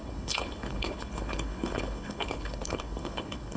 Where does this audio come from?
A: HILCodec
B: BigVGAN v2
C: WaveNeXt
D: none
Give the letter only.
A